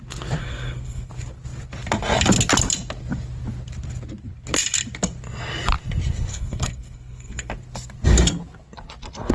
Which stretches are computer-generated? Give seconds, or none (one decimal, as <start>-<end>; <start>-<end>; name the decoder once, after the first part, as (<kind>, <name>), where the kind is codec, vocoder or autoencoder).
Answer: 0.4-1.1 (codec, SNAC); 6.3-7.5